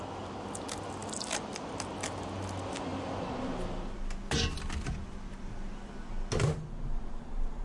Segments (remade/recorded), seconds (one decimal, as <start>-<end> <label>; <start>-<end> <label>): 0.0-7.6 recorded